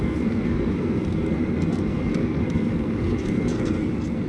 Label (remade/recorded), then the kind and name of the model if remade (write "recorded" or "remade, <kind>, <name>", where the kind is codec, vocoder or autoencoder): remade, codec, SNAC